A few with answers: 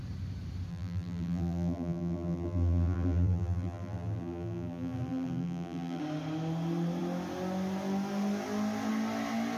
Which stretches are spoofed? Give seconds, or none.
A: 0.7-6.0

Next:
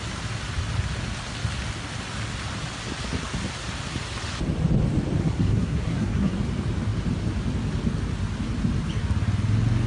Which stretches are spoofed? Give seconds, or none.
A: 5.2-6.4